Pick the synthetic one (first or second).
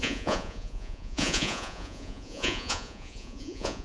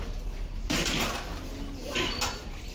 first